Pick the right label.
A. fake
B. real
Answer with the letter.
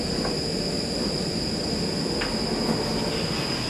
B